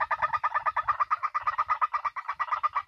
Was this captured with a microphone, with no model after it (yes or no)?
yes